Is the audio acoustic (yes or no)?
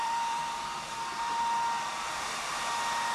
no